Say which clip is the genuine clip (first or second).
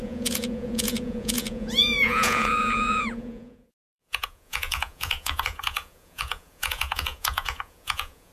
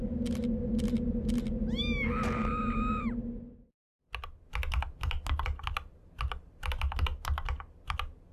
second